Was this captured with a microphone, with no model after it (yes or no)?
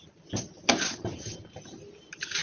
yes